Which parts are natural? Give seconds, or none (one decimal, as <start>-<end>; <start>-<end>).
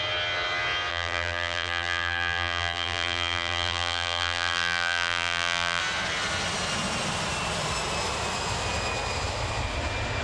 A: 0.0-0.9; 5.8-10.2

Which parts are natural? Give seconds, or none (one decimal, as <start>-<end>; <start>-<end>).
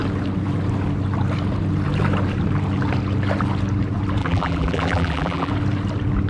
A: 0.0-4.2; 5.5-6.3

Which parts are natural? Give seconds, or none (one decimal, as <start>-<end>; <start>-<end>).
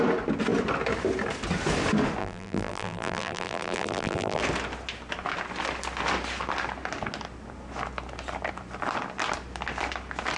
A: 0.0-2.2; 4.4-10.4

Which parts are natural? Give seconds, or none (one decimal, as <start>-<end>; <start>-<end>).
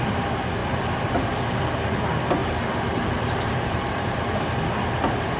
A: 0.0-2.4; 4.2-5.4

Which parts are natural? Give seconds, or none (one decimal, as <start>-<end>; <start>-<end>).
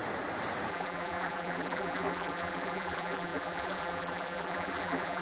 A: 0.0-0.7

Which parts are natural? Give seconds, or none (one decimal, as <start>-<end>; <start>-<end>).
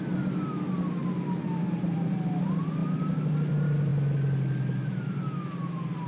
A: 0.0-6.1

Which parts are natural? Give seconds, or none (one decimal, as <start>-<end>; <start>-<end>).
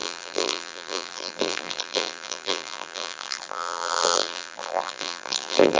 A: none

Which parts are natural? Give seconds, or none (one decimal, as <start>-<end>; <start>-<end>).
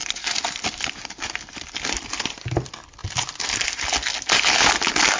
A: 1.6-5.2